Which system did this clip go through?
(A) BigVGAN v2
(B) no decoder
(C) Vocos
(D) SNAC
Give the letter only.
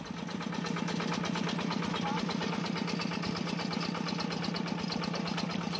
B